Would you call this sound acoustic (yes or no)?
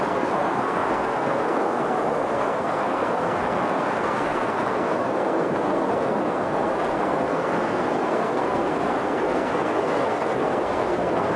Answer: no